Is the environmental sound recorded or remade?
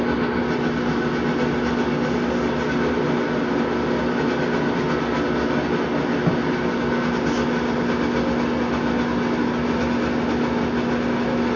recorded